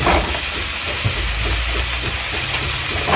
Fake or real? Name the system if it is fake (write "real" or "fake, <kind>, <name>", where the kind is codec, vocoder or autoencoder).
real